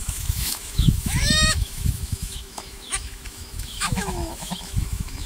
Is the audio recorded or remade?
remade